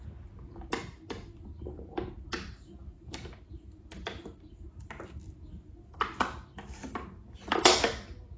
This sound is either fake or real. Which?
real